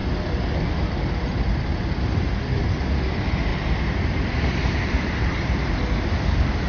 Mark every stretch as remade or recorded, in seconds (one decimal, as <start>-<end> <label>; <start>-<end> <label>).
0.0-3.5 recorded; 3.5-5.7 remade; 5.7-6.7 recorded